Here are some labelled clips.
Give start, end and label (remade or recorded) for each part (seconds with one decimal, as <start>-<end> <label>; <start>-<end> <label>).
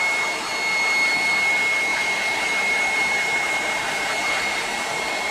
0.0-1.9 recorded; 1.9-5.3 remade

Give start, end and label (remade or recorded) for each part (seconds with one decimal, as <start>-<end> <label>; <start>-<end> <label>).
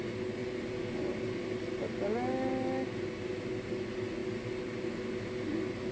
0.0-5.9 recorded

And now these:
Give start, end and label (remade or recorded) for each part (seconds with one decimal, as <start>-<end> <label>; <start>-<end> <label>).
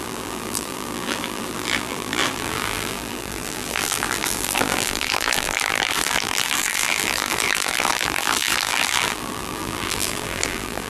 0.0-10.9 remade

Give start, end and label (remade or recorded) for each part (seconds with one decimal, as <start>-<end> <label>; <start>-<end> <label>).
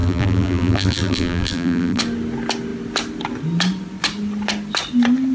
0.0-2.0 remade; 2.0-5.3 recorded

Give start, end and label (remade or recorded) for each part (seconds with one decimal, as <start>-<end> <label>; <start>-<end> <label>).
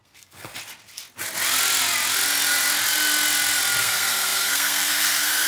0.0-0.5 remade; 0.5-3.8 recorded; 3.8-5.5 remade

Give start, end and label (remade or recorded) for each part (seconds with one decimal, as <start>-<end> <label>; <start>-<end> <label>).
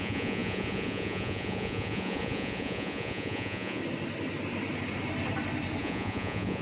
0.0-3.8 remade; 3.8-5.8 recorded; 5.8-6.6 remade